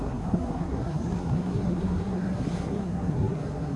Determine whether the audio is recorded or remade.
remade